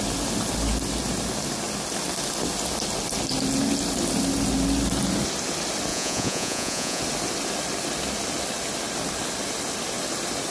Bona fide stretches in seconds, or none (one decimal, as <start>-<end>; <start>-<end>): 0.0-5.9; 7.0-10.5